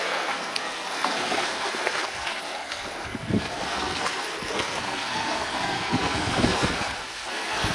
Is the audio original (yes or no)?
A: no